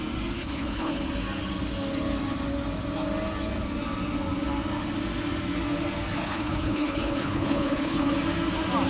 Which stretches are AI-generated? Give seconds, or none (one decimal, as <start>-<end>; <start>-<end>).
0.4-1.1; 6.2-8.1